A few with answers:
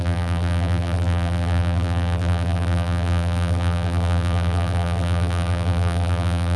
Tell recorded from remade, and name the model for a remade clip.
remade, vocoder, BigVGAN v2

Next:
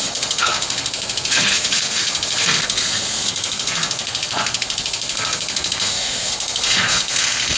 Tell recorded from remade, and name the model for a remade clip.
remade, codec, SNAC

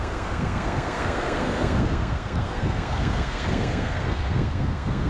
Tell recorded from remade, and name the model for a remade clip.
remade, codec, SNAC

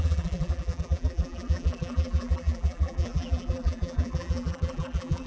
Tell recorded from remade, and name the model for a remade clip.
remade, vocoder, BigVGAN v2